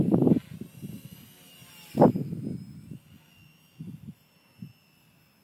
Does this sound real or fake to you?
real